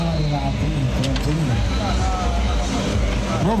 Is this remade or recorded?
recorded